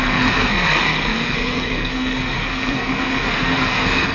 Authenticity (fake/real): fake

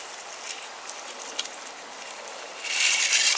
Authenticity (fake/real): real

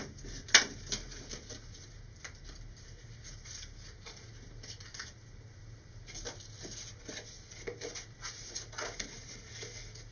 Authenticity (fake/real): real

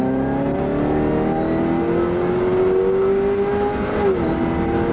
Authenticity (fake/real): real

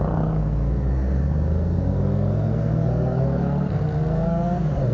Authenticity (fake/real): fake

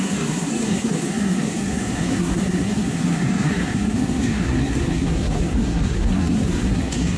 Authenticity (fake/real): fake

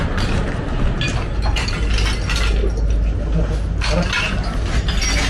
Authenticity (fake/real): real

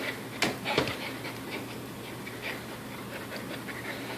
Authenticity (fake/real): real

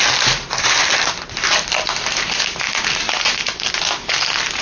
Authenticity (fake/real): real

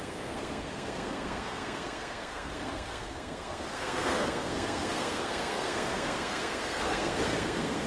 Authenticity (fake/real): fake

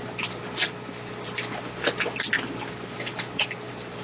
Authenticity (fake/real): real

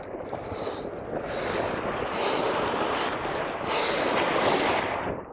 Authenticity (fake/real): real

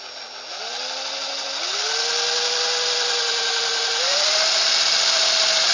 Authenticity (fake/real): real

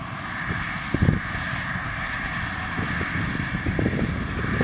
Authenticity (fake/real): real